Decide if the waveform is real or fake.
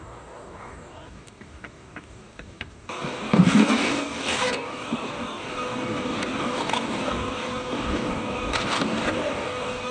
fake